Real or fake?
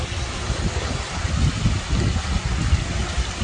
real